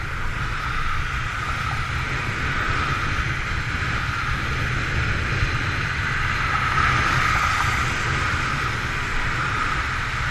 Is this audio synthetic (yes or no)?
no